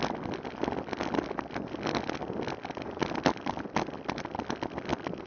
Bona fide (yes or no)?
yes